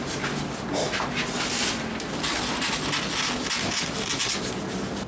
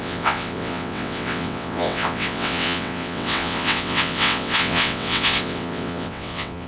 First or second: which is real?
first